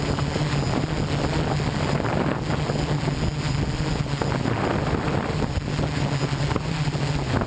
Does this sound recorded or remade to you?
recorded